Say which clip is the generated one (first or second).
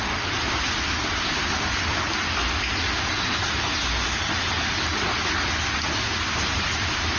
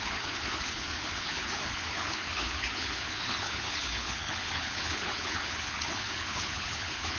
second